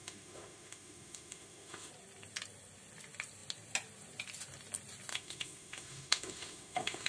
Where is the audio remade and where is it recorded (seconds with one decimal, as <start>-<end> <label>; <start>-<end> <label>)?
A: 0.0-1.9 remade; 1.9-5.1 recorded; 5.1-7.1 remade